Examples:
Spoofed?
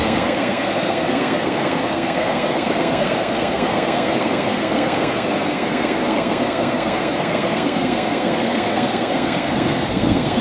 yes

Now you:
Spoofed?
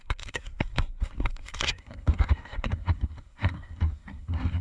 yes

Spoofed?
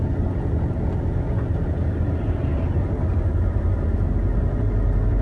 no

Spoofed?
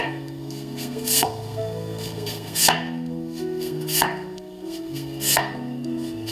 yes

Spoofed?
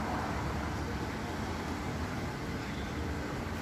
no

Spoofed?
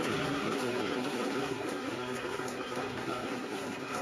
yes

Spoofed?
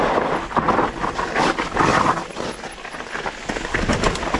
no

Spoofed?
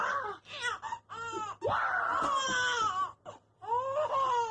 no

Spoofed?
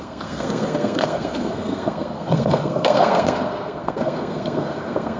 yes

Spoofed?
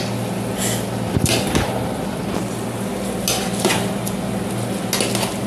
no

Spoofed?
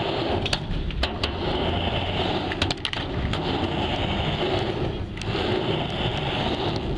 no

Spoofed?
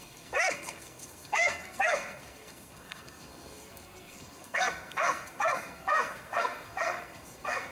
yes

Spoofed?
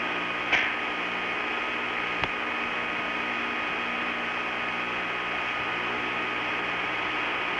no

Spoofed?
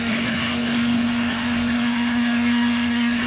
yes